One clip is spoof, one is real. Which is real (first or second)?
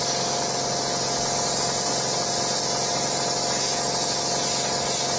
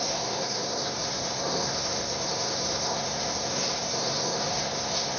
first